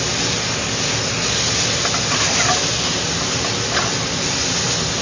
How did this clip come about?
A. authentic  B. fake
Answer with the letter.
A